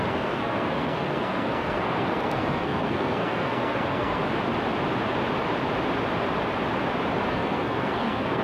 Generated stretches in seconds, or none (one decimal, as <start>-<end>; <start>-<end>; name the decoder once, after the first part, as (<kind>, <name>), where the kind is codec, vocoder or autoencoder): 0.0-4.2 (codec, SNAC); 7.3-8.4